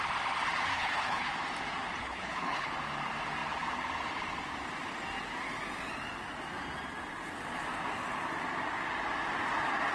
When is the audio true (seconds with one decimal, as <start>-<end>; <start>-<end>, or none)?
0.0-0.7; 1.3-2.0; 2.7-9.9